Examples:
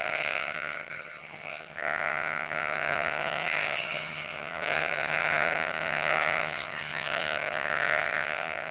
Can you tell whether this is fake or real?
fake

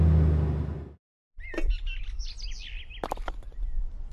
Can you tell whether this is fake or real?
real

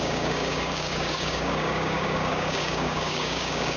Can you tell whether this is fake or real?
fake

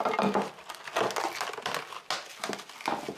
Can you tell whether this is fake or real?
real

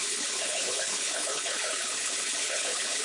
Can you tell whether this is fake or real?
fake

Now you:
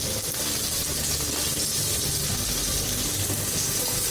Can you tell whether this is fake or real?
real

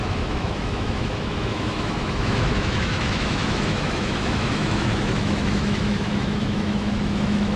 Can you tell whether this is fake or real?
fake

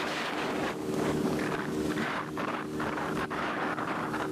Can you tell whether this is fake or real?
fake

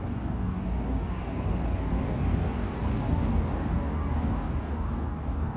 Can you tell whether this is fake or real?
fake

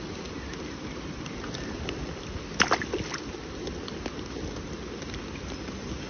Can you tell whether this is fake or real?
real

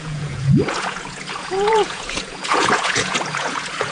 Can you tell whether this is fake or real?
fake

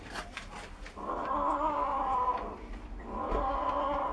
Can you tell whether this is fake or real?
real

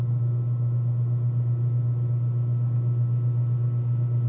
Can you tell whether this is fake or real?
real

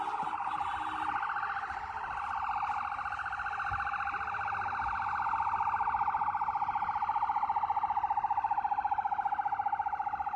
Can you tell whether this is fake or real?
real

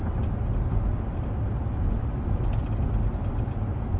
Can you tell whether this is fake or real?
real